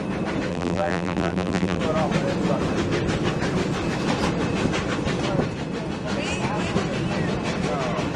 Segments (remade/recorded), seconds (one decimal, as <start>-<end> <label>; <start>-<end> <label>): 0.0-0.5 recorded; 0.5-1.8 remade; 1.8-8.2 recorded